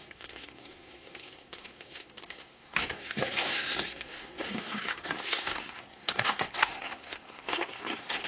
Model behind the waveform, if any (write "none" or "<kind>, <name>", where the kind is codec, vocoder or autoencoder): codec, SNAC